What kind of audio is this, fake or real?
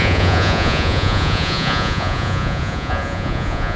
fake